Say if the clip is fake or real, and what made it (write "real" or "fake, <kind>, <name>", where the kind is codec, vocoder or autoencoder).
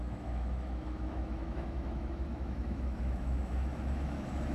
fake, autoencoder, DAC-VAE